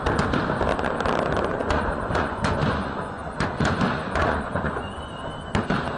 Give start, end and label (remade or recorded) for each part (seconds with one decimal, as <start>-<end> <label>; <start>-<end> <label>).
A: 0.0-1.5 recorded; 1.5-5.1 remade; 5.1-6.0 recorded